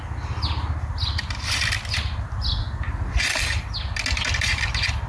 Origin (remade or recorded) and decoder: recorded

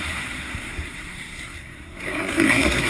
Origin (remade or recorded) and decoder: remade, codec, SNAC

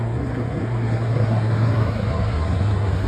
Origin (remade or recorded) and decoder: remade, codec, SNAC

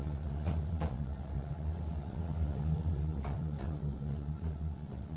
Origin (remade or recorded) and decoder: remade, vocoder, WaveNeXt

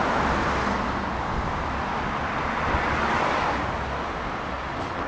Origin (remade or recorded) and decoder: recorded